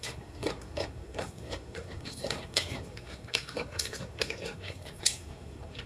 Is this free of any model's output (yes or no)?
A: no